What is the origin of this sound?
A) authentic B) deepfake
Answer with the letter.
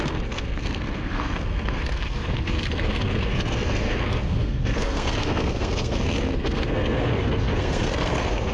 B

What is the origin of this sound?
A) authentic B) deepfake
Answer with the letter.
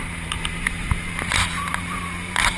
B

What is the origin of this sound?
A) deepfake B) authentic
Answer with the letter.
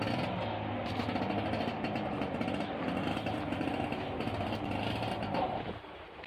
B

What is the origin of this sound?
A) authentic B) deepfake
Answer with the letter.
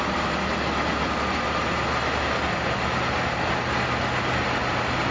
A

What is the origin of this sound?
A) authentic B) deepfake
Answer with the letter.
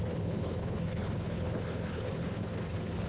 B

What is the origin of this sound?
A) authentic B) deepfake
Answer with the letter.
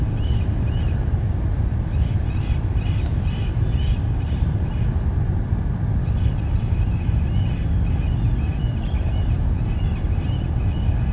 A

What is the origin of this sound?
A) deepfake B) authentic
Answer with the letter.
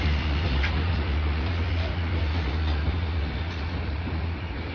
A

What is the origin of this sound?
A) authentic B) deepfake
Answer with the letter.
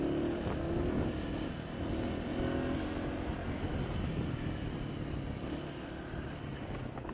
A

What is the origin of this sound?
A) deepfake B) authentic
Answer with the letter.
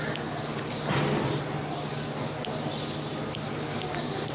B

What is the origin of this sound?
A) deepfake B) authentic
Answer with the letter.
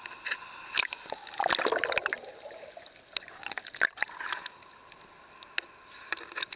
B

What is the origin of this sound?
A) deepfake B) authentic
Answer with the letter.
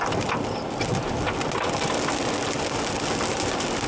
B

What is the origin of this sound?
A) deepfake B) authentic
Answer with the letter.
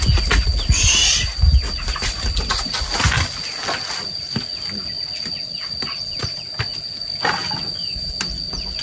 B